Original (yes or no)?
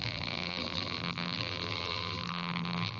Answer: no